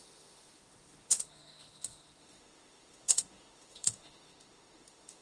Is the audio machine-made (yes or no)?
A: yes